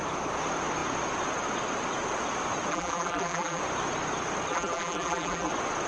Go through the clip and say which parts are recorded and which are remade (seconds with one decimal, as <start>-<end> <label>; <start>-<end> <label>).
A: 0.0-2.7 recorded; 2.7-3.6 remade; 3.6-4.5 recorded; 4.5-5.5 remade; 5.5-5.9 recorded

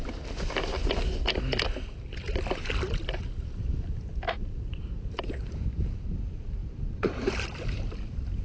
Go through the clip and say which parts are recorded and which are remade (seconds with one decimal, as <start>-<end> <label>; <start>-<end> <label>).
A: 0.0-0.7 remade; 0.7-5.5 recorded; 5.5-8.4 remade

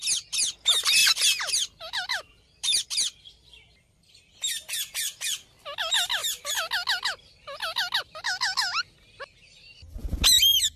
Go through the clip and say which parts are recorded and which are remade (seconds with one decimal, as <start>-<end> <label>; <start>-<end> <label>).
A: 0.0-1.0 recorded; 1.0-4.1 remade; 4.1-10.0 recorded; 10.0-10.8 remade

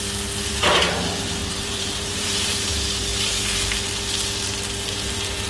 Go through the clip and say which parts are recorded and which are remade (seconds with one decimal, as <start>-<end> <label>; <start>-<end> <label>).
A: 0.0-1.4 recorded; 1.4-2.7 remade; 2.7-5.5 recorded

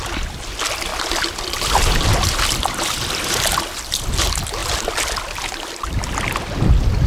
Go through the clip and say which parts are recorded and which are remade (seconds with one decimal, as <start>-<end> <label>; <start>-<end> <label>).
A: 0.0-0.9 recorded; 0.9-2.9 remade; 2.9-7.1 recorded

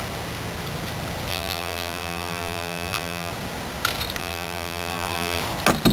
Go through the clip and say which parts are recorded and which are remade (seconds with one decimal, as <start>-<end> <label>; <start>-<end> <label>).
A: 0.0-1.3 recorded; 1.3-3.3 remade; 3.3-4.2 recorded; 4.2-5.4 remade; 5.4-5.9 recorded

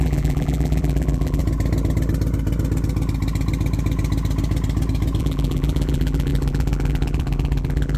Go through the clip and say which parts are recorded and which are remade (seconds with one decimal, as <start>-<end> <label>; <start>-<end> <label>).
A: 0.0-1.4 remade; 1.4-5.2 recorded; 5.2-8.0 remade